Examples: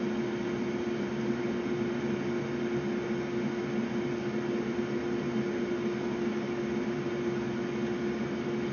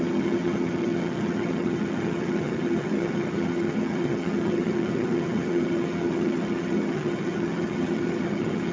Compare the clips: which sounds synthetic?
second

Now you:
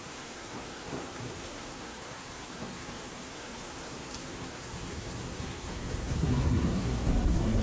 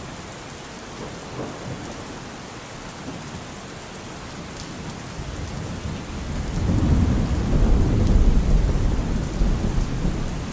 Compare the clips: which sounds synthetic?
first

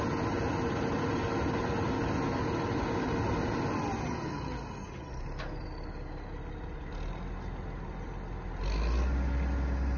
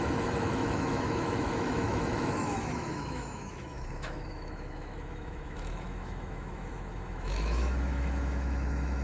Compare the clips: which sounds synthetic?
second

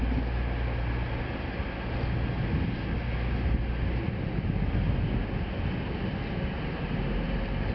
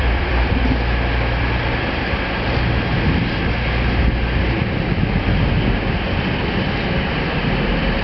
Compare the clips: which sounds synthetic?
second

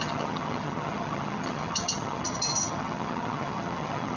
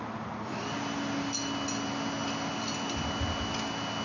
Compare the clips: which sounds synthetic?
first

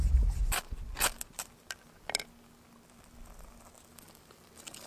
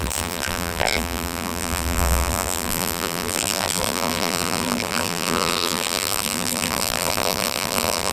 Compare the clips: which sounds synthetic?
second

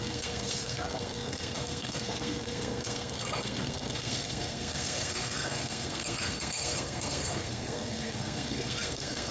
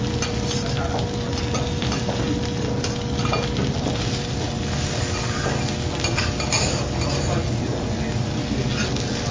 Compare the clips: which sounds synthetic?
first